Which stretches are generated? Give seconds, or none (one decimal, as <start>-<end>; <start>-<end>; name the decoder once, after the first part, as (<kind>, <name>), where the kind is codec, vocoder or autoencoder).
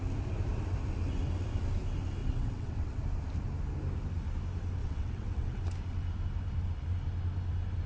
2.2-3.0 (vocoder, WaveNeXt); 4.8-5.6